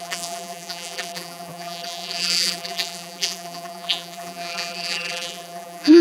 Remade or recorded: remade